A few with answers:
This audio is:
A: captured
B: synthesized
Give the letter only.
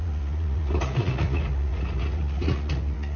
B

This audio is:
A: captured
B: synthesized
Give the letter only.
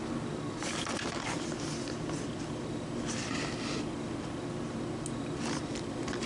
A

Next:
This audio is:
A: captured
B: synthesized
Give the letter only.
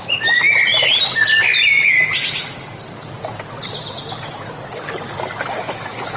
A